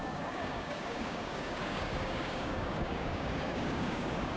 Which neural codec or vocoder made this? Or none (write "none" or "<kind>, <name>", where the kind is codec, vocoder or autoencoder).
codec, DAC